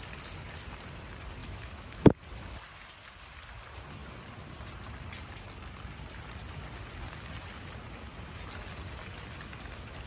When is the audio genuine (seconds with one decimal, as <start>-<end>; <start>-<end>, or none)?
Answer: 0.0-1.4; 2.1-10.1